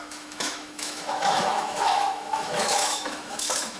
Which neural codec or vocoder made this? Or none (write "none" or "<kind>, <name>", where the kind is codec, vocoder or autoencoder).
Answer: autoencoder, DAC-VAE